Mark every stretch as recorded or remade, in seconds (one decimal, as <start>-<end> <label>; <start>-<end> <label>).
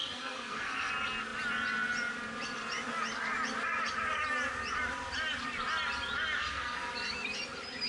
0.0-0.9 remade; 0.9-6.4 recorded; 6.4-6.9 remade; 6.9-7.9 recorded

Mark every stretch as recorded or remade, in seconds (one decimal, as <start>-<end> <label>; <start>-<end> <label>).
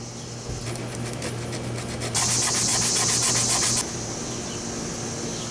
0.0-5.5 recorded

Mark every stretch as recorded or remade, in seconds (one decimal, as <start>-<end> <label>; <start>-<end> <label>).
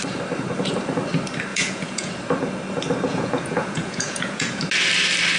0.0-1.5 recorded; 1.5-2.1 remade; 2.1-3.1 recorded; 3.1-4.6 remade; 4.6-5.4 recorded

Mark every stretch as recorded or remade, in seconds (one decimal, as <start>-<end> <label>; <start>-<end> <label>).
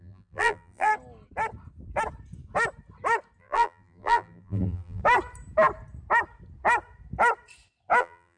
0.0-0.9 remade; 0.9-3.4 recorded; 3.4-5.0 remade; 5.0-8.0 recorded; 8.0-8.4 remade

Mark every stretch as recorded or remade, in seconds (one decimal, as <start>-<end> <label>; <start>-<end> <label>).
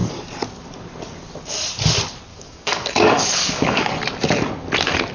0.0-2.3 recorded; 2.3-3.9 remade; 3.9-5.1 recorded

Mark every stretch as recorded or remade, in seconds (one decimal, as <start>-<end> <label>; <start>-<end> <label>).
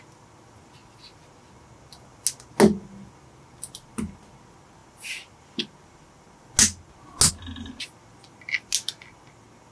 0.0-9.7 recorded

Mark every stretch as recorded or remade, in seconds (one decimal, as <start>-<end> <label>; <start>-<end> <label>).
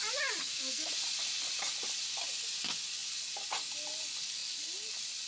0.0-0.4 recorded; 0.4-0.9 remade; 0.9-5.3 recorded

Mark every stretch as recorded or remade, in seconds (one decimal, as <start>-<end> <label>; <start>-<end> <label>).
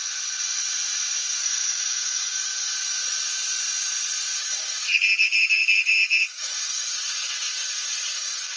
0.0-1.4 recorded; 1.4-2.7 remade; 2.7-4.4 recorded; 4.4-8.6 remade